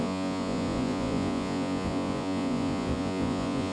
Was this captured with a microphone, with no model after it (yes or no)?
no